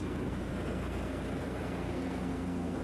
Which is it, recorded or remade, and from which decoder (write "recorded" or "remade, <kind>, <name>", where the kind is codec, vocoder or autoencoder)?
remade, codec, SNAC